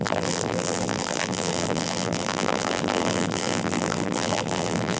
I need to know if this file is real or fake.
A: fake